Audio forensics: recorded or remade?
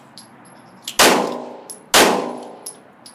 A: recorded